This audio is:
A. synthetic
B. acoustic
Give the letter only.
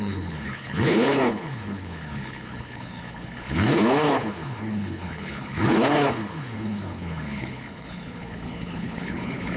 A